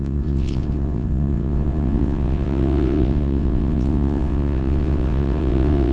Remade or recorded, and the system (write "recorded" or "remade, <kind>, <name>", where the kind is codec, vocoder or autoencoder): remade, vocoder, WaveNeXt